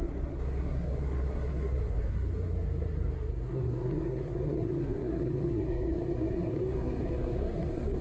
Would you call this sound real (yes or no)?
no